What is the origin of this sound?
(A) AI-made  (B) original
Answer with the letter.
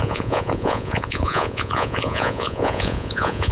A